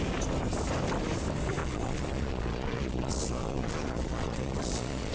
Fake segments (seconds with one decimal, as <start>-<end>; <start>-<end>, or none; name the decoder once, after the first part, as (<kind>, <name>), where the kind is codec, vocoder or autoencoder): 1.6-5.1 (vocoder, Vocos)